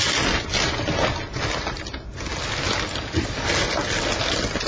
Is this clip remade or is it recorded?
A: recorded